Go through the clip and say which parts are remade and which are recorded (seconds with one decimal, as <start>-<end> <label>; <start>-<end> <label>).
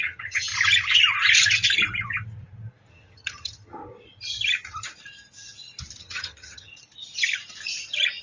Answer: 0.0-0.5 remade; 0.5-2.9 recorded; 2.9-3.8 remade; 3.8-6.0 recorded; 6.0-6.7 remade; 6.7-8.2 recorded